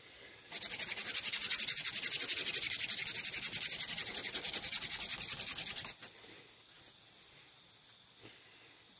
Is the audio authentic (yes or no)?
yes